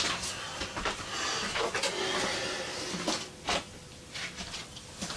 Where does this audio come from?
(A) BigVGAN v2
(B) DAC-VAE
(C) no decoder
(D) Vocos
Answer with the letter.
C